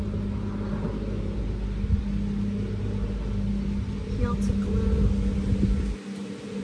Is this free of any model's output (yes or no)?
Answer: yes